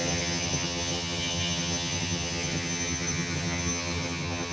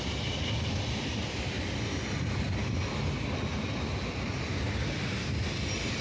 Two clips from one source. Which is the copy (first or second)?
first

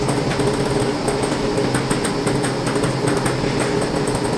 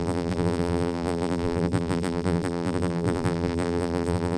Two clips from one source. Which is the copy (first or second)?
second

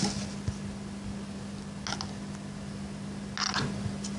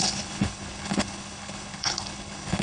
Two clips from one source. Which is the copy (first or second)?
second